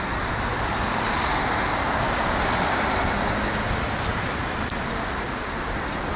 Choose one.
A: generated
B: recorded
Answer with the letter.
B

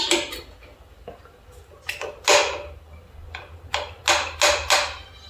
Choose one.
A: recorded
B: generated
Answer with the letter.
A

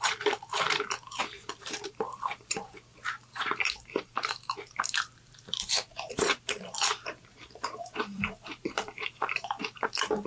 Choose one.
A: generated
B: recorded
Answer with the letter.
A